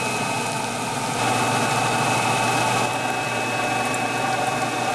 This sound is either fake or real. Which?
real